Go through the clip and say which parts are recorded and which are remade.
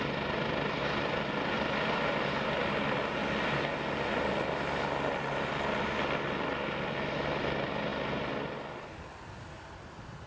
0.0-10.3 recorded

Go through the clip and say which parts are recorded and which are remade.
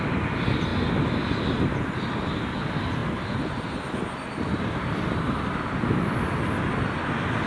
0.0-7.5 recorded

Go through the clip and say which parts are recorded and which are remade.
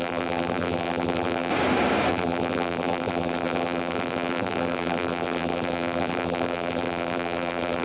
0.0-1.5 remade; 1.5-2.1 recorded; 2.1-7.8 remade